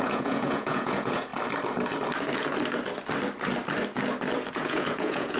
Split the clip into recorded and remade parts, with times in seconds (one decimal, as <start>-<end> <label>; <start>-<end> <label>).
0.0-1.3 remade; 1.3-4.5 recorded; 4.5-5.4 remade